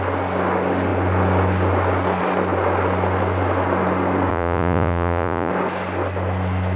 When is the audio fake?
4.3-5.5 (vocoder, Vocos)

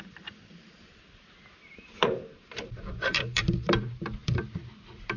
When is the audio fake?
0.0-5.2 (vocoder, BigVGAN v2)

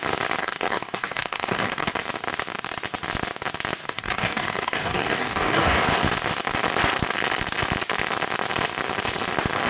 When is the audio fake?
0.4-1.9 (codec, DAC); 3.8-5.8

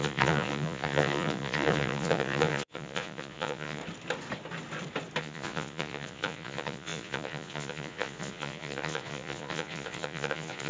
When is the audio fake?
0.0-3.8 (vocoder, Vocos); 5.2-10.7

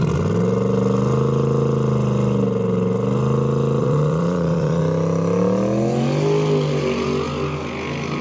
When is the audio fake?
3.8-4.8 (vocoder, Vocos)